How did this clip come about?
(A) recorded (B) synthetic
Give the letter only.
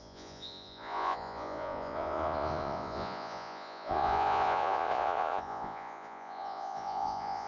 B